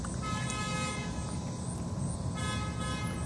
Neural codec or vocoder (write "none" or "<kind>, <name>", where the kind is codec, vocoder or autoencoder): none